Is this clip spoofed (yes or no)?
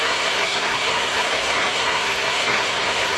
yes